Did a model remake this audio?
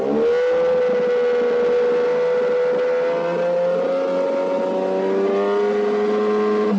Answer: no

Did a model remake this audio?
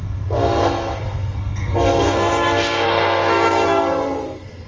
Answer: yes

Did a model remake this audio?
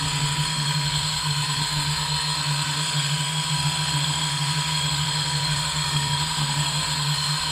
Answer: yes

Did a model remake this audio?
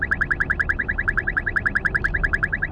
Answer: no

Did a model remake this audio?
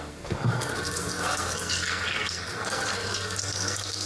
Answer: yes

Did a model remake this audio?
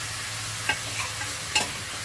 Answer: no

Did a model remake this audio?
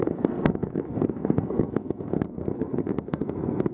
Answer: yes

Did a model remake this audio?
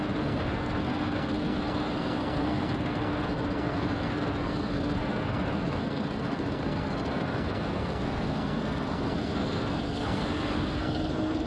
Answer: yes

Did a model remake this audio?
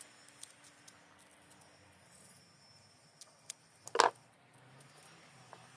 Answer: no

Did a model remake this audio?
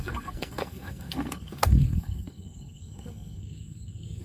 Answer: yes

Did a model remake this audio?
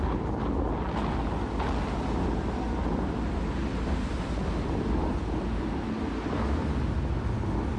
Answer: no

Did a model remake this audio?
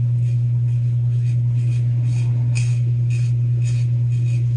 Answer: no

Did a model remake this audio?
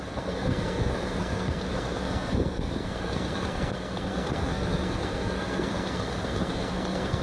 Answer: yes